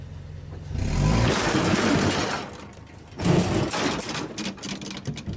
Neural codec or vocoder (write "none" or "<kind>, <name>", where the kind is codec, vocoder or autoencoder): none